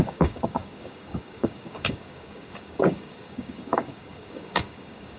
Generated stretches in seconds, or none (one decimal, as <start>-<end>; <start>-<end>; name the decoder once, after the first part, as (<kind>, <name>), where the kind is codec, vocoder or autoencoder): 0.0-5.2 (codec, DAC)